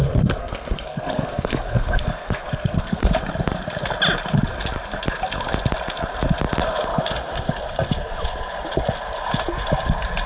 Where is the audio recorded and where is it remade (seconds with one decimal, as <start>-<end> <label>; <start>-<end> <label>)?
0.0-0.4 recorded; 0.4-3.1 remade; 3.1-10.3 recorded